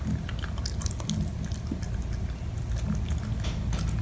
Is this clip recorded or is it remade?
recorded